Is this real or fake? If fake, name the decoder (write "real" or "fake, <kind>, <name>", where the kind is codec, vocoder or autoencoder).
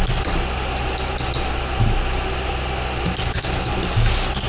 real